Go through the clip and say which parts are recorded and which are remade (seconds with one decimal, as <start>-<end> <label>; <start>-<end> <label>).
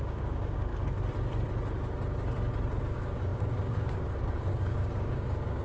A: 0.0-0.7 remade; 0.7-2.8 recorded; 2.8-5.6 remade